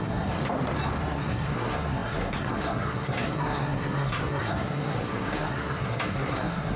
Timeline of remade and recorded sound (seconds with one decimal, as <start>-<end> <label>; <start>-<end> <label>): 0.0-0.4 remade; 0.4-1.0 recorded; 1.0-6.8 remade